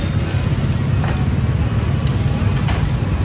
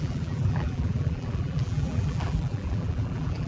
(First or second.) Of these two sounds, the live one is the first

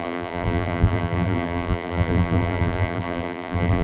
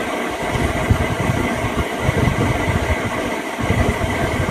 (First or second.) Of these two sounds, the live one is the second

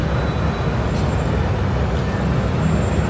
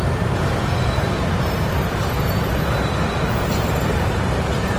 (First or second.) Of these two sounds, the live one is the first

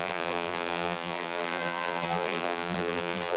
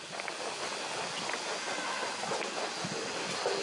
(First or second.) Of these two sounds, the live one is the second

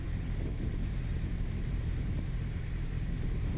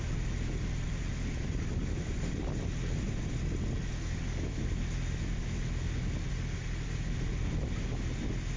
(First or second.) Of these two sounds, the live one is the second